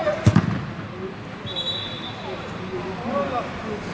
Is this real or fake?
real